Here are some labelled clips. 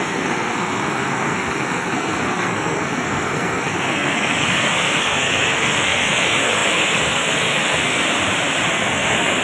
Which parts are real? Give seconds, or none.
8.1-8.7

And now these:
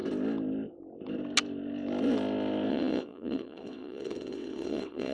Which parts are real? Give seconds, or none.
0.0-2.7

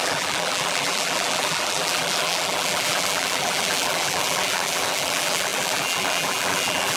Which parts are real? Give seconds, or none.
none

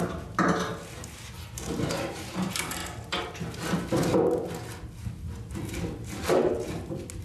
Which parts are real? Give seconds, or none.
0.7-1.9; 2.8-7.2

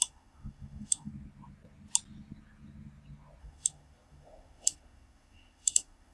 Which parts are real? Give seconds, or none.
1.1-3.4

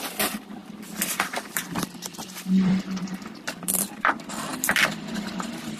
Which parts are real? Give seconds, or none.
none

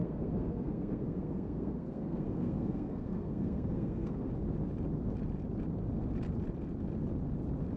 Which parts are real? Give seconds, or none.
4.3-7.8